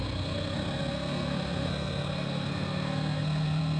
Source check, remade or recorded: remade